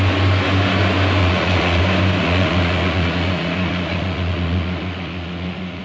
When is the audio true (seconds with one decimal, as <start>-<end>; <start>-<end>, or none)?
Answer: 0.0-1.2; 1.8-2.2